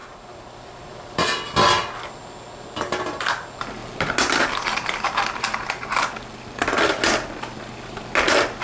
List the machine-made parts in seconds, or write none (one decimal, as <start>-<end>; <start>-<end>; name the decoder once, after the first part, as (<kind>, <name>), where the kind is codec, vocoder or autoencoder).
none